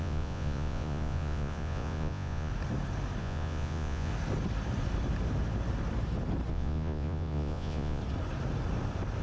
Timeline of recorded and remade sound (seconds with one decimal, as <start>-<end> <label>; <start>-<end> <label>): 0.0-2.5 remade; 2.5-3.2 recorded; 3.2-4.1 remade; 4.1-6.5 recorded; 6.5-8.0 remade; 8.0-9.2 recorded

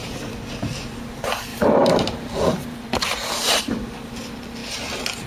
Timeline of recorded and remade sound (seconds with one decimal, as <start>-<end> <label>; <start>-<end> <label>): 0.0-1.5 recorded; 1.5-3.6 remade; 3.6-5.3 recorded

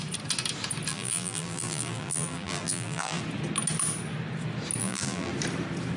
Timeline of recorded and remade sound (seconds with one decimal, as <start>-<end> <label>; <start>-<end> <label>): 0.0-0.9 recorded; 0.9-3.2 remade; 3.2-4.8 recorded; 4.8-5.3 remade; 5.3-6.0 recorded